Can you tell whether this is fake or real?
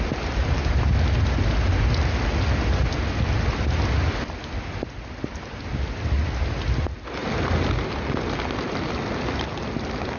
real